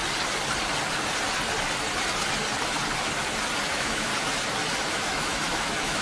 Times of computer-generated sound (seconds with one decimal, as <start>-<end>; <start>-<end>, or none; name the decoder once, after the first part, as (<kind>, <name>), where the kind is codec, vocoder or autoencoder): 3.6-4.1 (autoencoder, DAC-VAE); 4.9-6.0